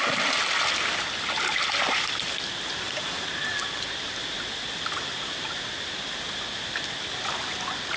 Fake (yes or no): no